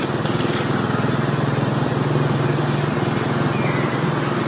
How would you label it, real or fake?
real